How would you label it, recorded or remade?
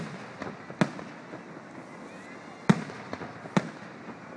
recorded